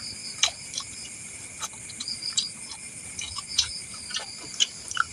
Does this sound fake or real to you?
fake